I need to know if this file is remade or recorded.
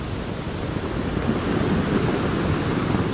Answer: recorded